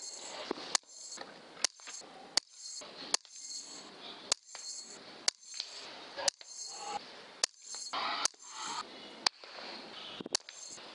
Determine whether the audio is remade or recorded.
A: recorded